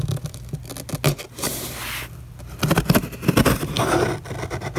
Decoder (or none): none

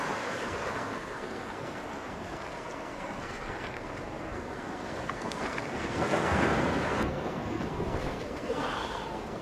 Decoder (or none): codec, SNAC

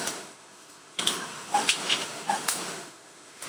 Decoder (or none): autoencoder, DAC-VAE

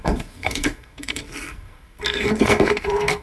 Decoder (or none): codec, SNAC